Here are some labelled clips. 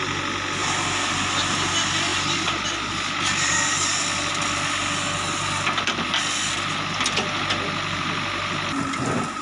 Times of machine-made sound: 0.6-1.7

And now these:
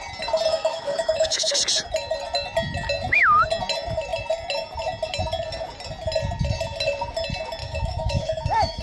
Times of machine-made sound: 0.5-1.6; 7.6-8.8

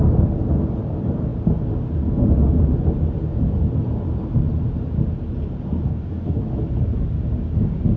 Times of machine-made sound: 5.9-6.4